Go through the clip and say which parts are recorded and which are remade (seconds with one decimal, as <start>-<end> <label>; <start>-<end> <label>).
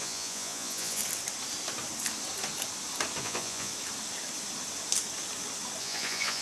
0.0-1.0 remade; 1.0-3.2 recorded; 3.2-3.7 remade; 3.7-5.8 recorded; 5.8-6.4 remade